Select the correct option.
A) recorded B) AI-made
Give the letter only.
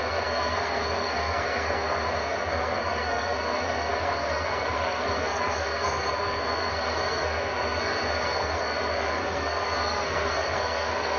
B